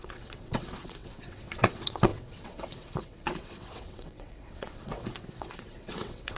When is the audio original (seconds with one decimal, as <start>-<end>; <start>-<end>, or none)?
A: none